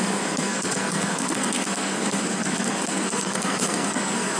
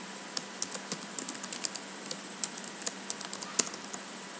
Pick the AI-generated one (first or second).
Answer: first